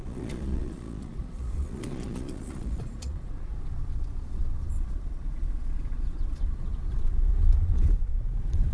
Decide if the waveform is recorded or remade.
remade